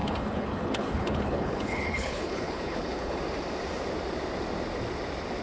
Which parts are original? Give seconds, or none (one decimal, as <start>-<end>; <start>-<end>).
3.2-5.4